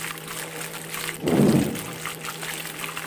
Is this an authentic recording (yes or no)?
yes